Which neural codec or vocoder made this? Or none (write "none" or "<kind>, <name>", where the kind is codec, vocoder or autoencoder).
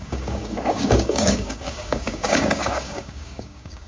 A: codec, DAC